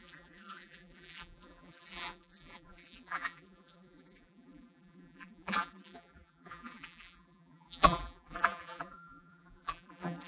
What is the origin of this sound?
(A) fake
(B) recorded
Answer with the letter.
A